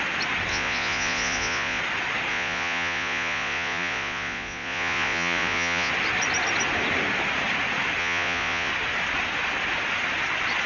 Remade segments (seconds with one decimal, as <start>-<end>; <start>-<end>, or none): 0.5-1.8; 2.3-5.9; 8.0-8.7